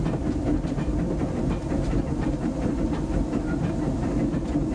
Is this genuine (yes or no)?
yes